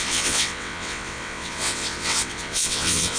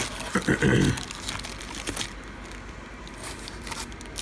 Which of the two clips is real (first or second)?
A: second